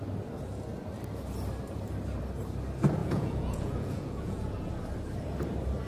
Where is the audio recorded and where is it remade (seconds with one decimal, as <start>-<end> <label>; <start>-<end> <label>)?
0.0-3.0 recorded; 3.0-4.7 remade; 4.7-5.9 recorded